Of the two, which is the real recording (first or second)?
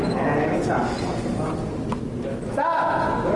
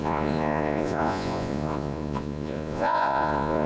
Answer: first